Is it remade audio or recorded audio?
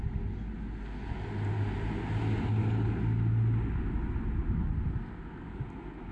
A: recorded